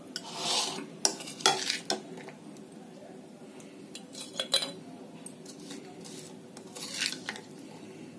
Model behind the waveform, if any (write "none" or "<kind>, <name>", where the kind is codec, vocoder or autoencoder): none